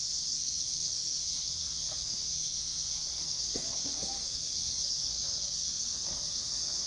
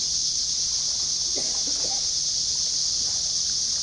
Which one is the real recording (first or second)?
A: second